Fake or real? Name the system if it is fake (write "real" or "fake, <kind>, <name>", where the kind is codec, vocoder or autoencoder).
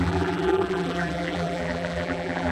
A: fake, vocoder, BigVGAN v2